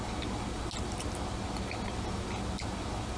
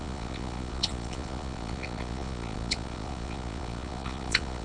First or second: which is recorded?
first